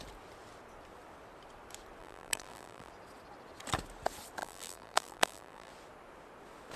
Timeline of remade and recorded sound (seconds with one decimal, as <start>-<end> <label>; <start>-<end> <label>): 0.0-2.0 recorded; 2.0-2.9 remade; 2.9-4.4 recorded; 4.4-5.7 remade; 5.7-6.8 recorded